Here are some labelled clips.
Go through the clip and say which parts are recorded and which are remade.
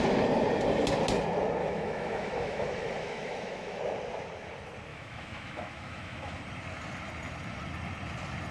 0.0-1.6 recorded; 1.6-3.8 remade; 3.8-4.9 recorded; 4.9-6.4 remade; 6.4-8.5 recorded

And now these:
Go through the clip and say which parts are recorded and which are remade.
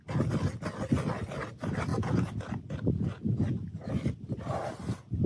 0.0-1.9 recorded; 1.9-2.5 remade; 2.5-5.3 recorded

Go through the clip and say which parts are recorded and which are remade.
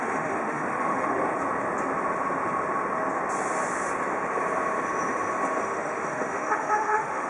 0.0-1.2 remade; 1.2-5.6 recorded; 5.6-7.3 remade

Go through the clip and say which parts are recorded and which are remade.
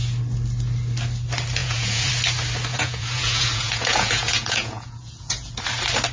0.0-1.6 recorded; 1.6-2.1 remade; 2.1-2.7 recorded; 2.7-5.5 remade; 5.5-6.1 recorded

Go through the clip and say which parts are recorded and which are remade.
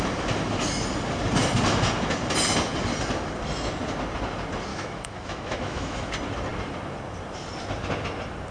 0.0-4.7 recorded; 4.7-6.1 remade; 6.1-8.5 recorded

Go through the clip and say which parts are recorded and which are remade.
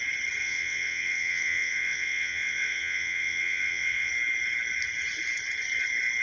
0.0-0.4 recorded; 0.4-4.1 remade; 4.1-6.2 recorded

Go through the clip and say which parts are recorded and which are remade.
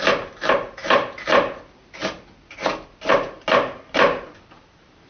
0.0-5.1 recorded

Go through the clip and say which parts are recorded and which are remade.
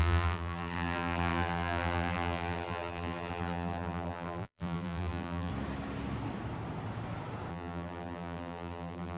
0.0-5.5 remade; 5.5-7.5 recorded; 7.5-9.2 remade